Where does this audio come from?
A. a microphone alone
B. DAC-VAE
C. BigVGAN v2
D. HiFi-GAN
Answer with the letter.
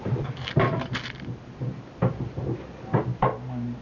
A